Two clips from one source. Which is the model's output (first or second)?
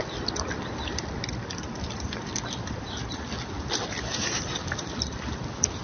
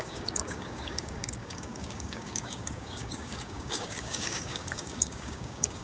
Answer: second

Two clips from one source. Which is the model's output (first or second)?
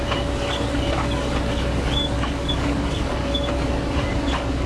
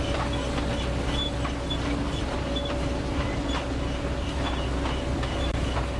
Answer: first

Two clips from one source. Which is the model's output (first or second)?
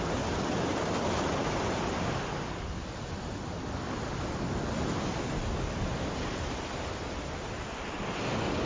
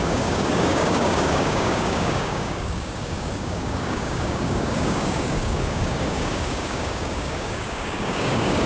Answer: second